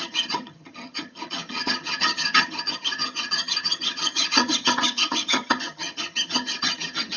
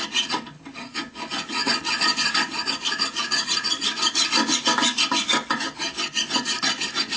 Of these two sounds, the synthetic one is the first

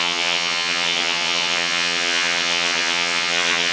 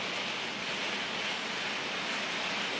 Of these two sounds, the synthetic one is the first